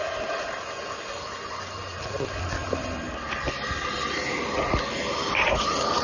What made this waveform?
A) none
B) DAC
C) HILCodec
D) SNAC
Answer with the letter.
A